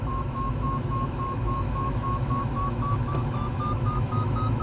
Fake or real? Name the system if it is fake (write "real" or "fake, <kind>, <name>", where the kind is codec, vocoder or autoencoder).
fake, autoencoder, DAC-VAE